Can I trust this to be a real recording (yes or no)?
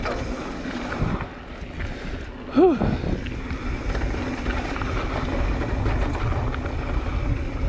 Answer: yes